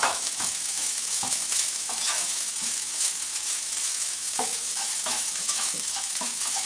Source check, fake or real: fake